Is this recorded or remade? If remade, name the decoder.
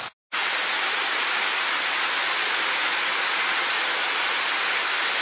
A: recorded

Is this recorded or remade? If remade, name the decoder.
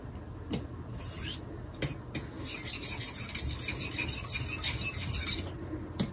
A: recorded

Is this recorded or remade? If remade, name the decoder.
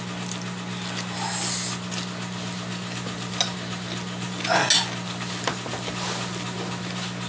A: recorded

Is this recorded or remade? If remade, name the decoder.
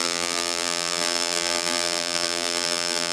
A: remade, vocoder, BigVGAN v2